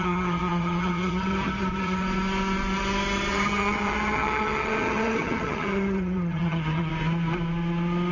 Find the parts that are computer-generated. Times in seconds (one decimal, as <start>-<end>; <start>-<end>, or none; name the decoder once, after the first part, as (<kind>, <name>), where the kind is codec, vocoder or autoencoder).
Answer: 0.0-2.0 (vocoder, HiFi-GAN); 3.3-6.9